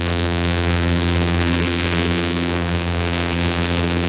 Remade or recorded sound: remade